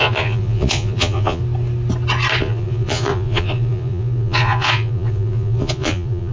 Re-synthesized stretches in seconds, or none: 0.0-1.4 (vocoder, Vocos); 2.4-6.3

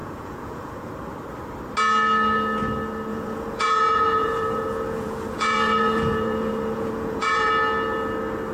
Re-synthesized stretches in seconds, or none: 0.0-0.9 (vocoder, Vocos); 3.1-7.5